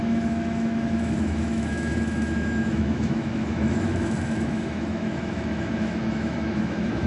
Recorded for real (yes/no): no